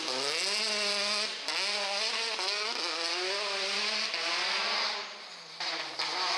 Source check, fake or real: real